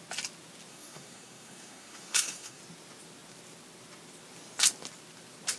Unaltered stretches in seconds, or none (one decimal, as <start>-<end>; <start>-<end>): 0.0-0.7; 2.6-5.6